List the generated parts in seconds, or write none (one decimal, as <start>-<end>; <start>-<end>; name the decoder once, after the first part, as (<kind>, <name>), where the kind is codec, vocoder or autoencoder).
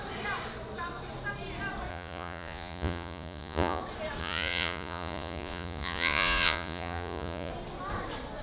1.9-3.8 (vocoder, Vocos); 4.2-7.5